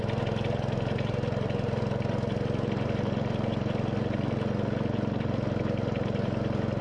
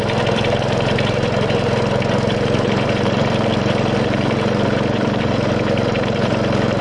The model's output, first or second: second